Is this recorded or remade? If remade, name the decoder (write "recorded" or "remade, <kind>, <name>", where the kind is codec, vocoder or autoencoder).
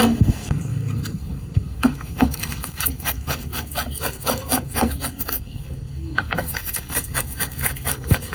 remade, codec, SNAC